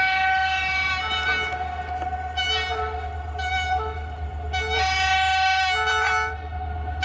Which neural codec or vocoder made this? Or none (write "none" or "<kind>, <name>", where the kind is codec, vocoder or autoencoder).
none